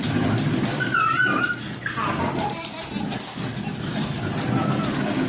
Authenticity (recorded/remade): recorded